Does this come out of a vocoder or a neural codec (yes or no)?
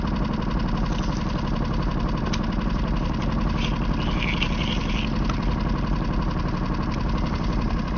no